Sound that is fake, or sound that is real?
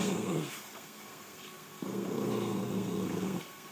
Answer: fake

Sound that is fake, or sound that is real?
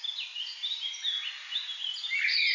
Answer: real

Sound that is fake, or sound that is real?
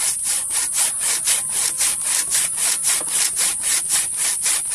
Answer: real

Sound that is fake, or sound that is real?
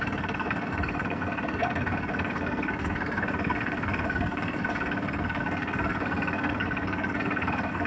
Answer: fake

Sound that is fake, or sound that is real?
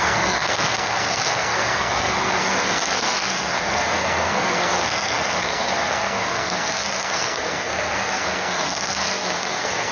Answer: fake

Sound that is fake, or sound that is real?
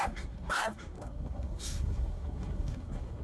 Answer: fake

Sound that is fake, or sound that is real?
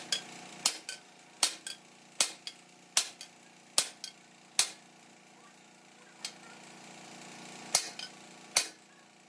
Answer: real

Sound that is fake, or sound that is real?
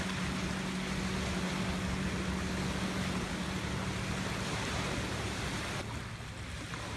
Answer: real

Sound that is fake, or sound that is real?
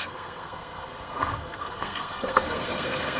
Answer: fake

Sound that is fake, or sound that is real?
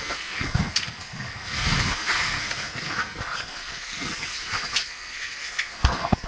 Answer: fake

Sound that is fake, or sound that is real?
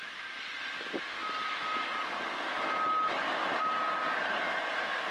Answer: real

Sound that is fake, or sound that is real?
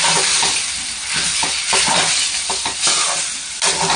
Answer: real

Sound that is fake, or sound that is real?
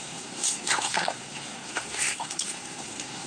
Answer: fake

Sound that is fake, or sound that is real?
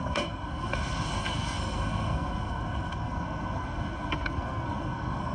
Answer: fake